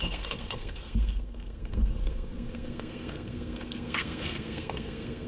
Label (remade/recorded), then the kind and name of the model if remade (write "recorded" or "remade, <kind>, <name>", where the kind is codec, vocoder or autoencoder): remade, codec, SNAC